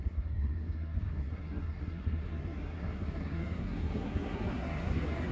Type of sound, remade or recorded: remade